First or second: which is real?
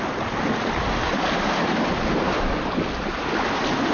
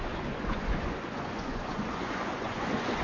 first